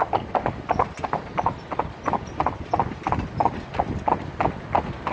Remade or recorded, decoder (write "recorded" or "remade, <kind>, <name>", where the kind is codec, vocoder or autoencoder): recorded